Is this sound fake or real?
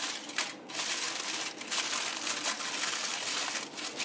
real